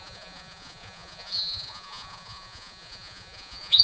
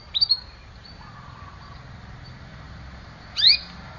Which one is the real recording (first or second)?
second